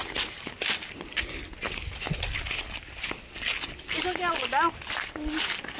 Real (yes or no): yes